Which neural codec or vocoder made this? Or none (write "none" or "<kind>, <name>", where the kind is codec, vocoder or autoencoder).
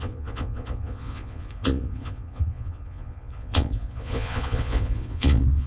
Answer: vocoder, Vocos